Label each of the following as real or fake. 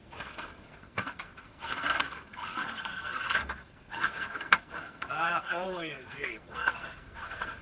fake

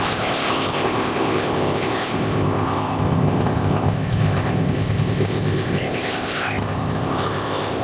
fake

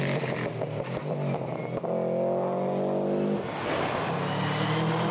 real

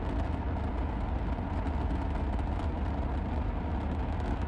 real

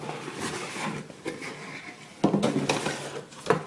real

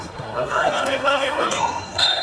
fake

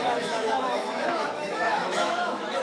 fake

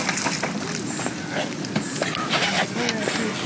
real